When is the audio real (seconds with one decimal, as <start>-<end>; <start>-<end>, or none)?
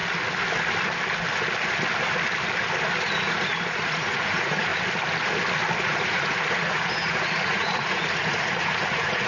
0.0-3.0; 4.7-5.8